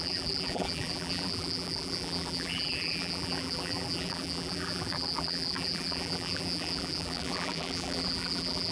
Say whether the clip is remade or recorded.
remade